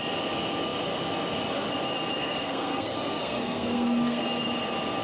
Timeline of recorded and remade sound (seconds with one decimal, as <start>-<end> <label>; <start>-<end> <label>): 0.0-2.2 recorded; 2.2-4.2 remade; 4.2-5.0 recorded